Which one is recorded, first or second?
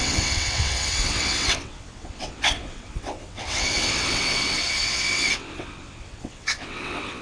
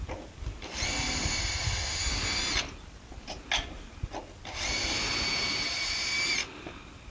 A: second